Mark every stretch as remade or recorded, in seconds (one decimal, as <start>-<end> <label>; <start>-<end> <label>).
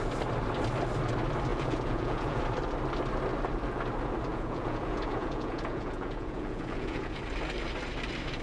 0.0-1.5 recorded; 1.5-2.4 remade; 2.4-4.3 recorded; 4.3-7.2 remade; 7.2-8.4 recorded